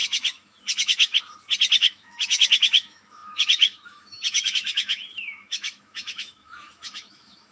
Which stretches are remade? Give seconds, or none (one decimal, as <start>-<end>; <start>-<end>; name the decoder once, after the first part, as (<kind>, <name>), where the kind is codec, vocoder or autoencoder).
0.0-1.2 (autoencoder, DAC-VAE); 1.8-7.5